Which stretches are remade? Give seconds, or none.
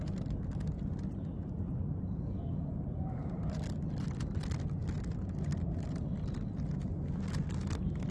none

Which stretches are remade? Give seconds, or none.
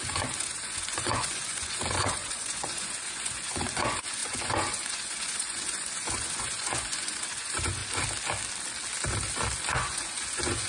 0.0-7.8; 9.7-10.7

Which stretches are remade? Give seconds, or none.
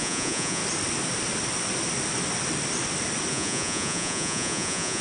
0.0-0.6; 3.3-5.0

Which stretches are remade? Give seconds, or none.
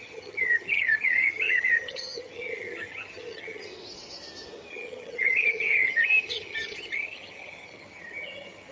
0.0-3.7; 4.7-8.7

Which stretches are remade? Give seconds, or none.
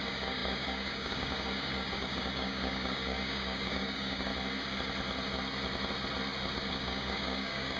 0.0-4.3; 6.7-7.8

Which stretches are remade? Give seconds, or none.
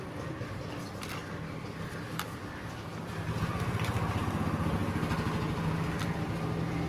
none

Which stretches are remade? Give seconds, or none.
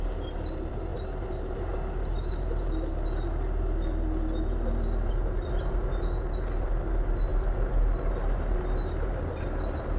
none